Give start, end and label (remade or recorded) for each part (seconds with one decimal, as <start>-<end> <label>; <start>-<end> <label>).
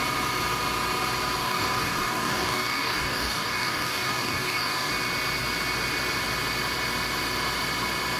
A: 0.0-1.4 recorded; 1.4-4.9 remade; 4.9-8.2 recorded